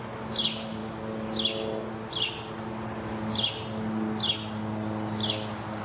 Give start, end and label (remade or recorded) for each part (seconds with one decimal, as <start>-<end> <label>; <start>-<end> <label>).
0.0-5.8 recorded